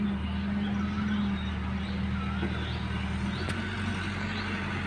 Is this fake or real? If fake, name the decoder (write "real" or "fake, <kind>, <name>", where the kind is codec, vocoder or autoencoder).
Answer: real